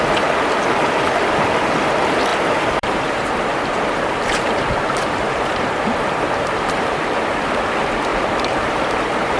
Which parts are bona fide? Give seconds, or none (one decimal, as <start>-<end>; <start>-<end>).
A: 0.0-2.3; 7.0-8.1